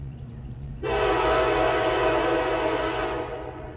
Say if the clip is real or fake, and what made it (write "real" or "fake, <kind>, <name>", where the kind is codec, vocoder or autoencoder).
fake, vocoder, Vocos